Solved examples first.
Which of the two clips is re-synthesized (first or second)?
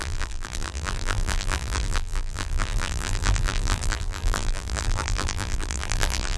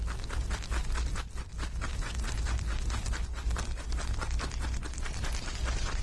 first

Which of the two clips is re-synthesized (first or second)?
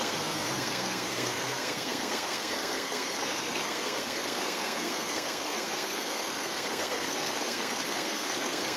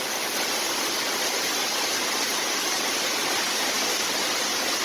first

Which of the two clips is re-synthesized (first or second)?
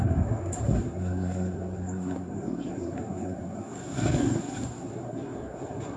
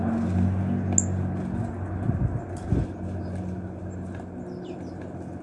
first